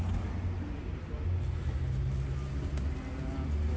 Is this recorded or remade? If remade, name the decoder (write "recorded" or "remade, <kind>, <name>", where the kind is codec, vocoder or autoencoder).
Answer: recorded